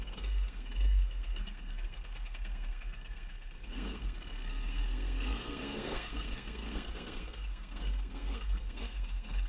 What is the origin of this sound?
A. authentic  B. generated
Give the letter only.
B